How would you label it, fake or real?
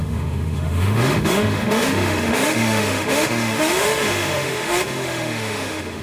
fake